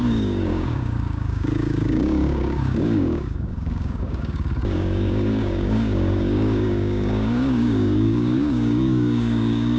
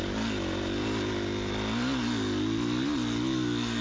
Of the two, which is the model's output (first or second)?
first